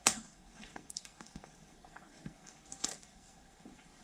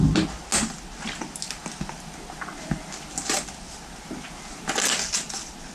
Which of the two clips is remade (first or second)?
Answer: first